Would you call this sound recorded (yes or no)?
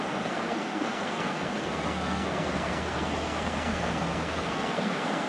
no